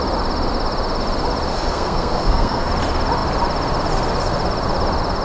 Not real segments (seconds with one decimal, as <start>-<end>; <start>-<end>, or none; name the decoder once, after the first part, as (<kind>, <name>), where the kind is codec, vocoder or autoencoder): 1.5-2.7 (codec, SNAC)